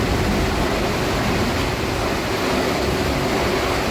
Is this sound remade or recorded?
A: recorded